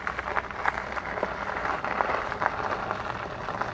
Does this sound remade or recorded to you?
recorded